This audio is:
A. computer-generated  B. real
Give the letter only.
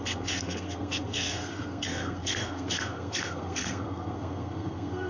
A